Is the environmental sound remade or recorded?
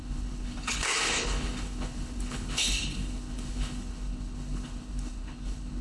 remade